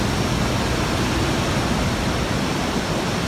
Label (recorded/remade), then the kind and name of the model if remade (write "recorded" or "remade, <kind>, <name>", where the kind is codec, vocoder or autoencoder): recorded